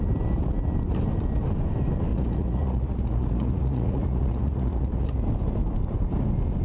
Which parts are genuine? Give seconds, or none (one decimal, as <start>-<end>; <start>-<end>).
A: 0.0-2.1; 5.2-6.6